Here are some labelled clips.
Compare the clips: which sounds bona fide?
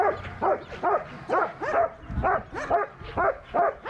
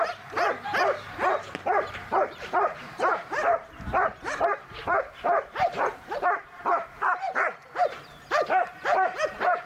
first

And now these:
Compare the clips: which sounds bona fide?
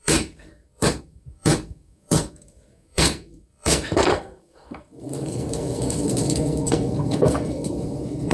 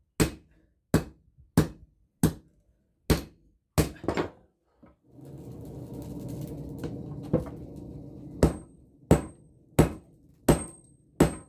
second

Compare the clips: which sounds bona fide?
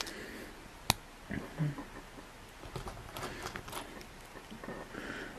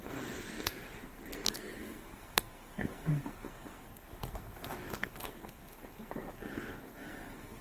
first